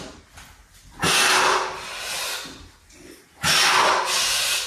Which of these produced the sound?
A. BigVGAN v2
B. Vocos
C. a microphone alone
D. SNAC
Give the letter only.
C